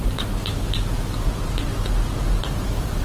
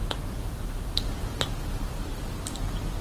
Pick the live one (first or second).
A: first